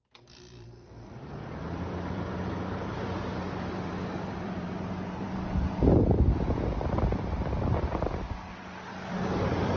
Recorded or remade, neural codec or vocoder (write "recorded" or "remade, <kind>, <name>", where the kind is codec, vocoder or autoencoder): remade, vocoder, BigVGAN v2